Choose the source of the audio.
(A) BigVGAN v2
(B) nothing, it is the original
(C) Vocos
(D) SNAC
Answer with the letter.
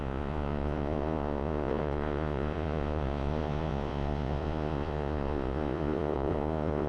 C